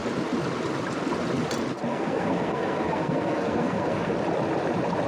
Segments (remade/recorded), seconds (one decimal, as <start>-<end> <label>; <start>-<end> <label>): 0.0-1.9 recorded; 1.9-4.1 remade; 4.1-5.1 recorded